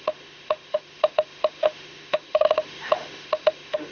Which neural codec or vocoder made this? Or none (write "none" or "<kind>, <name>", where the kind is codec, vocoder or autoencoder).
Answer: autoencoder, DAC-VAE